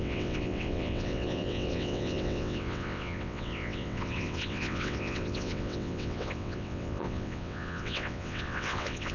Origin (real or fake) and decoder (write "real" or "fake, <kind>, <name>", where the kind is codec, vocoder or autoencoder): fake, vocoder, WaveNeXt